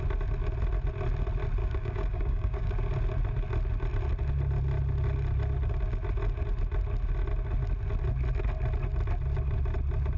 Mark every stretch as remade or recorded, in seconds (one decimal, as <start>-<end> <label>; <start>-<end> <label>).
0.0-1.6 recorded; 1.6-2.7 remade; 2.7-10.2 recorded